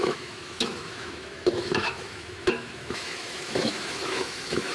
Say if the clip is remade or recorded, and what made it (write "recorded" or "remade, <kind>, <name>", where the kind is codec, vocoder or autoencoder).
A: remade, autoencoder, DAC-VAE